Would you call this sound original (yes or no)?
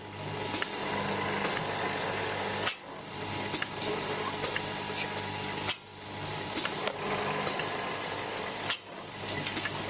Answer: yes